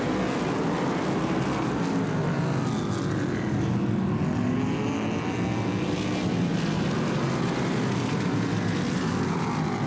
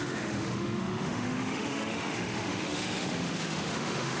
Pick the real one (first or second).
first